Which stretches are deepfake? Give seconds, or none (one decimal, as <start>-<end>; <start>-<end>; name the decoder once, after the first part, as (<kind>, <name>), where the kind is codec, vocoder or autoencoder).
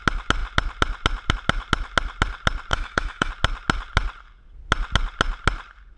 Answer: 2.7-3.3 (autoencoder, DAC-VAE)